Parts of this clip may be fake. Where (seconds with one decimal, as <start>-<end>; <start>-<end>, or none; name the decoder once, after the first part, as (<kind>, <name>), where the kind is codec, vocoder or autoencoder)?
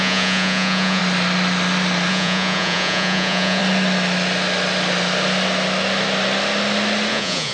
0.0-1.0 (vocoder, Vocos); 2.1-3.6; 7.1-7.5